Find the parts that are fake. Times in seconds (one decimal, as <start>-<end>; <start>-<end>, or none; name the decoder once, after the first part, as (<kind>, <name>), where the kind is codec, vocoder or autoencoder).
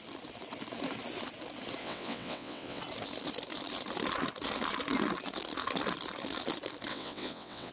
1.8-2.8 (vocoder, WaveNeXt); 6.9-7.7